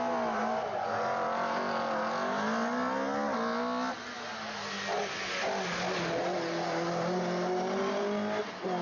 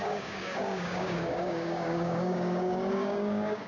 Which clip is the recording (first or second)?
first